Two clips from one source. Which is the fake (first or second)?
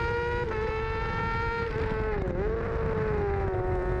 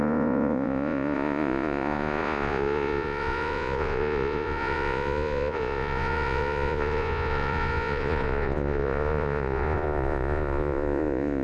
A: second